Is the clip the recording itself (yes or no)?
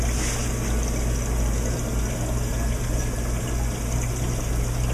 yes